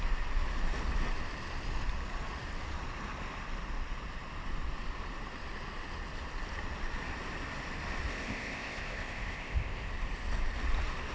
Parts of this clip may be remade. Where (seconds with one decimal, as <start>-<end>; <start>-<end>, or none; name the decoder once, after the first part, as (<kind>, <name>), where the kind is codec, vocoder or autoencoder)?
8.1-9.9 (codec, ZipCodec)